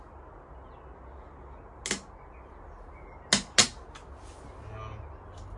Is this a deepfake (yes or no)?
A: no